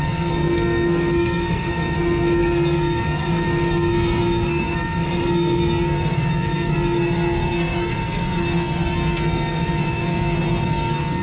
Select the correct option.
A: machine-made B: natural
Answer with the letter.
A